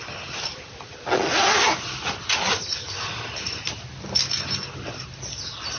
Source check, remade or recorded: recorded